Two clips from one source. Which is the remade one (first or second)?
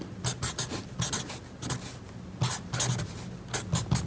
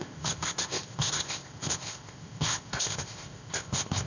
second